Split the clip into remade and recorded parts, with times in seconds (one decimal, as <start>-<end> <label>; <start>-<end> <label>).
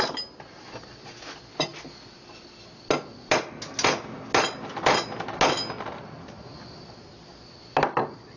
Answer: 0.0-8.4 recorded